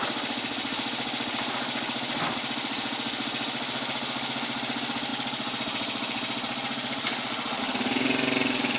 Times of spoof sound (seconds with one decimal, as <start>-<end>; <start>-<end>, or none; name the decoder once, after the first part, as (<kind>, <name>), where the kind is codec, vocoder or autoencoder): none